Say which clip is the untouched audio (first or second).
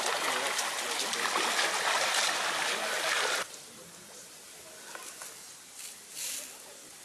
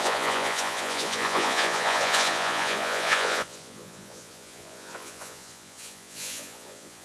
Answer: first